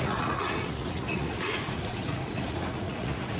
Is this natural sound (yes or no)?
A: no